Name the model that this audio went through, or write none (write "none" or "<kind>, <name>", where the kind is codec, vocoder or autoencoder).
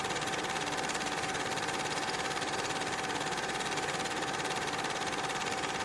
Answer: vocoder, BigVGAN v2